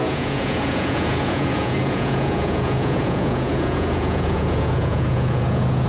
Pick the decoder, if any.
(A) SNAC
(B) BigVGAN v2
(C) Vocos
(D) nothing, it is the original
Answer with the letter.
C